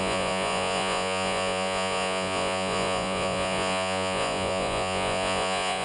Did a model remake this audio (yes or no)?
yes